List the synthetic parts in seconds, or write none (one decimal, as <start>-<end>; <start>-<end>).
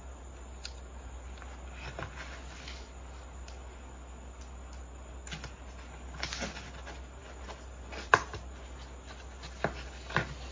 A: none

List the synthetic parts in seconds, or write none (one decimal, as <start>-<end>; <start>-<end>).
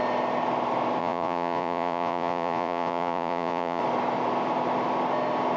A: 1.0-3.8